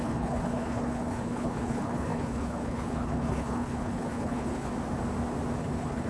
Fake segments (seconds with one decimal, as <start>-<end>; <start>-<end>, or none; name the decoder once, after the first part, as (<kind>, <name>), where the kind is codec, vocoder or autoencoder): 0.0-4.7 (codec, HILCodec); 5.6-6.1

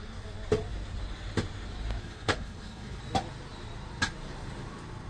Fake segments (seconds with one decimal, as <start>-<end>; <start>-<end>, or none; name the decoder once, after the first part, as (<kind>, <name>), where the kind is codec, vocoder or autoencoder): 2.0-3.0 (codec, HILCodec)

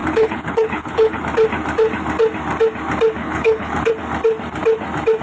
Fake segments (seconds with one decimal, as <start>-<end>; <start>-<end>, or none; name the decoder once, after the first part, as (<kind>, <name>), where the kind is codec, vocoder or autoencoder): 0.0-1.2 (codec, HILCodec); 3.2-3.9

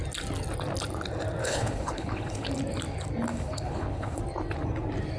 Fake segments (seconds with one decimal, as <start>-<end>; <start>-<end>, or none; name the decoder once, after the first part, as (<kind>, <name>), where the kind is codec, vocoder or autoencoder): 1.4-2.5 (codec, HILCodec); 3.3-4.2